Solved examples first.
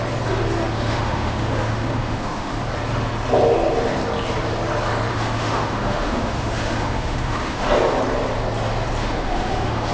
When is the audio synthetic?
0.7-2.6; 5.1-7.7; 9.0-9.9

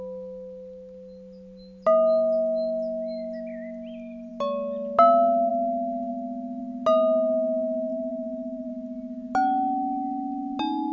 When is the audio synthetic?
7.9-8.7

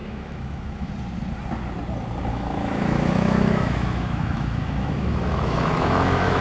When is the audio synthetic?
0.0-0.9; 2.3-6.4

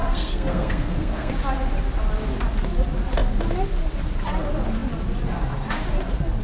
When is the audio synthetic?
0.0-1.3

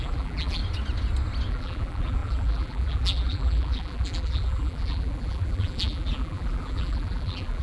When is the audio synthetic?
0.0-0.6; 1.5-7.6

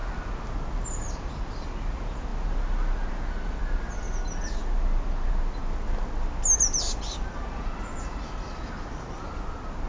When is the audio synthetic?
none